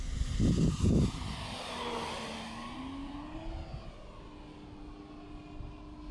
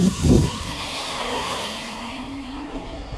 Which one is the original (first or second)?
first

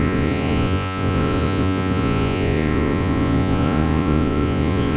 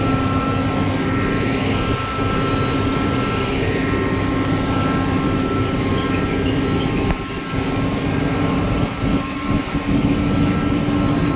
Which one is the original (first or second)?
second